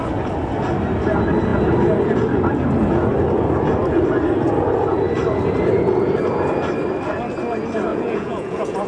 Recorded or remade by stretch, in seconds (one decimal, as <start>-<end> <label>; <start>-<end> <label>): 0.0-7.9 recorded; 7.9-8.9 remade